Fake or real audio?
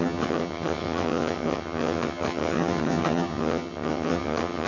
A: fake